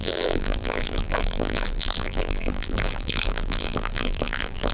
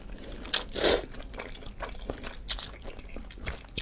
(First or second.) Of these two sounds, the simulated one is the first